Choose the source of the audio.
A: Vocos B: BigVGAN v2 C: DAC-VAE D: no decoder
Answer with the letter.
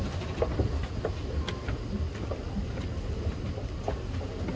D